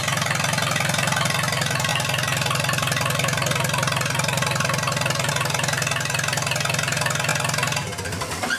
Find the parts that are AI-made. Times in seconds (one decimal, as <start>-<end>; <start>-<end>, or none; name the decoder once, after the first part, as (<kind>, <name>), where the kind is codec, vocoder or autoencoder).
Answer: none